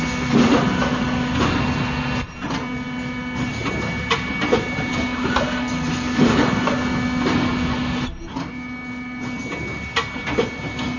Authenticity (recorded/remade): recorded